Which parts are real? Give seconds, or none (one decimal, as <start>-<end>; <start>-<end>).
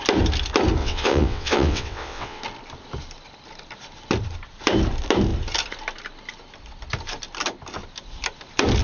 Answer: 0.0-0.8; 2.4-8.8